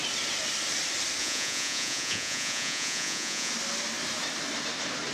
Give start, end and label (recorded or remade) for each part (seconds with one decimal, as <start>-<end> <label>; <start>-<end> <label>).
0.0-1.2 recorded; 1.2-3.5 remade; 3.5-5.1 recorded